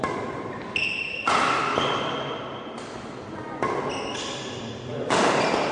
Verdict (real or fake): real